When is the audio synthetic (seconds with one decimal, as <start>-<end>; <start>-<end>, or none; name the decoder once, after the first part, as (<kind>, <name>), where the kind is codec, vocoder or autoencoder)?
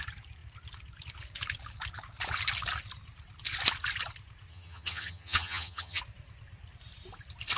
4.5-6.0 (vocoder, HiFi-GAN)